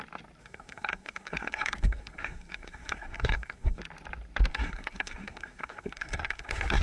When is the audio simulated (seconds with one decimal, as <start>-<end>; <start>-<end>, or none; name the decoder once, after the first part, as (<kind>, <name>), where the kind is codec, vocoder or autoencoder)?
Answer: 0.4-3.8 (codec, SNAC); 4.5-6.8